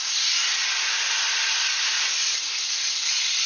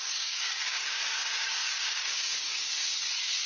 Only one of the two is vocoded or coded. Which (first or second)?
second